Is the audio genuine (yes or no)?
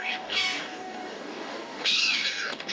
no